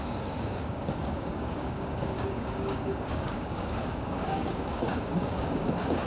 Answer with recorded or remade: remade